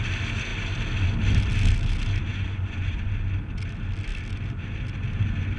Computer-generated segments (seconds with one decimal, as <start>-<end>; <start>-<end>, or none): 2.3-3.1